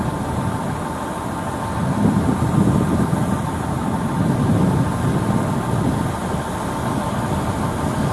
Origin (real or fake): real